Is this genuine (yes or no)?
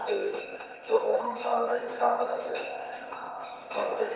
no